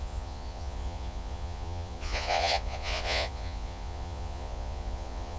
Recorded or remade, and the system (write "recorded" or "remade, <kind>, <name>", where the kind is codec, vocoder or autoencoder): remade, vocoder, Vocos